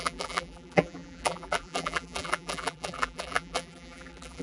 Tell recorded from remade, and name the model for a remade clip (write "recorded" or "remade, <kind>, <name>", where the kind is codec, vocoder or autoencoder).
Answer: remade, vocoder, BigVGAN v2